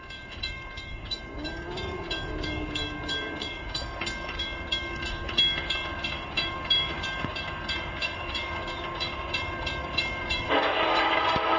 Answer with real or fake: fake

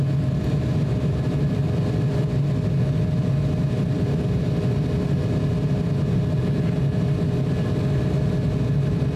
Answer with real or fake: real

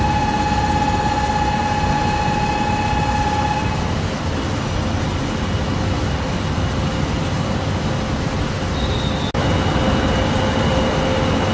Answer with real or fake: real